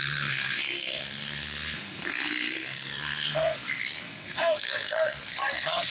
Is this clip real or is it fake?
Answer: fake